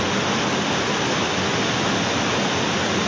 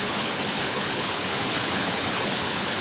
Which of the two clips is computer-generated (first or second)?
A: second